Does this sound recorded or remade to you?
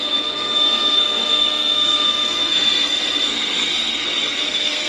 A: remade